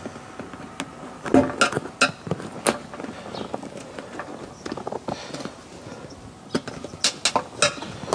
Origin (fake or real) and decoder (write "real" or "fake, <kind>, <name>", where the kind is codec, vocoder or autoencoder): real